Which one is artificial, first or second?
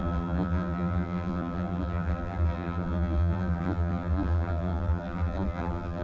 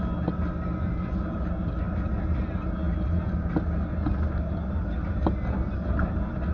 first